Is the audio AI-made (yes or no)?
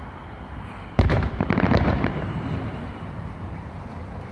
yes